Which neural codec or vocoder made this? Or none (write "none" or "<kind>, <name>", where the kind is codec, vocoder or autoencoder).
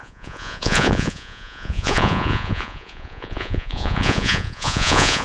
vocoder, Vocos